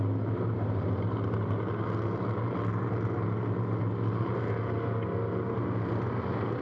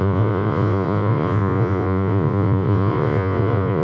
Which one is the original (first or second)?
first